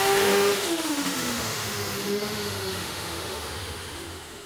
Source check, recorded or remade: remade